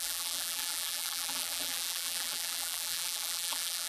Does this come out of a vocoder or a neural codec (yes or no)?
yes